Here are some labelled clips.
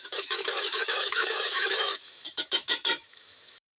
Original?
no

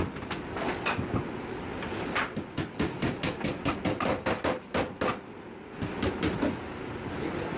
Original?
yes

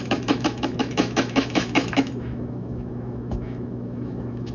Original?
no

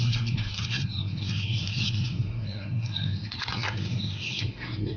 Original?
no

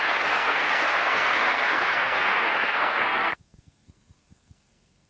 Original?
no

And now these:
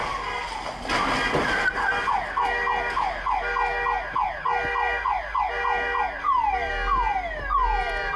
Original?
yes